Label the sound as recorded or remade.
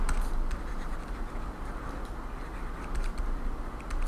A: recorded